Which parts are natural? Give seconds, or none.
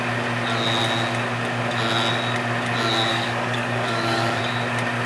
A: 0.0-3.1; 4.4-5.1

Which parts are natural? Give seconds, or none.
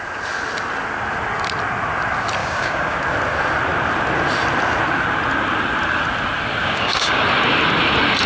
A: 0.0-2.4; 3.0-6.6; 7.2-8.3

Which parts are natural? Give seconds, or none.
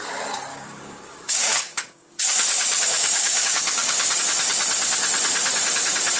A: 0.0-0.5; 4.2-6.2